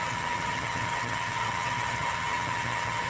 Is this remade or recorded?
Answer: remade